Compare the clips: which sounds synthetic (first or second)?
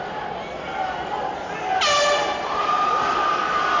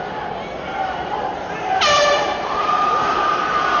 second